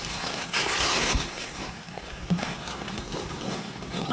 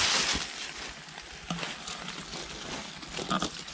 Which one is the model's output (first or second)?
first